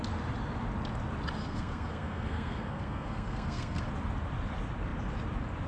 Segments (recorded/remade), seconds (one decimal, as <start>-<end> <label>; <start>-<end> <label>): 0.0-1.4 recorded; 1.4-3.9 remade; 3.9-5.7 recorded